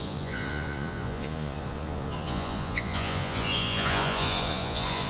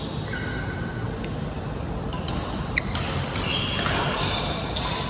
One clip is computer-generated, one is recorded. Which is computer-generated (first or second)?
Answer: first